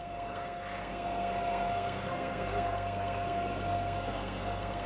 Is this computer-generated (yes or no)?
yes